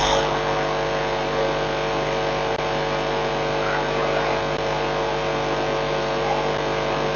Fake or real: real